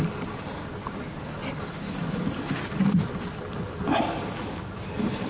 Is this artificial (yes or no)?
no